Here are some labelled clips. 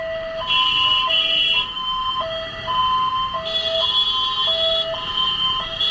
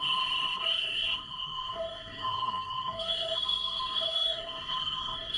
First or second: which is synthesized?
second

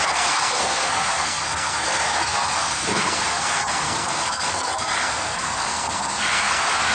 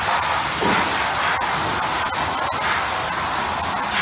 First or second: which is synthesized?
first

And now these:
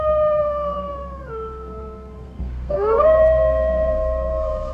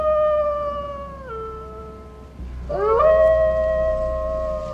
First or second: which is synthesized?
first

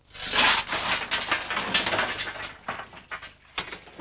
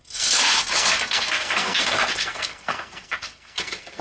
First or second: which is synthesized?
second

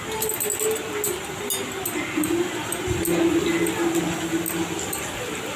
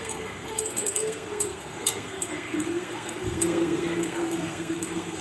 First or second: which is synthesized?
second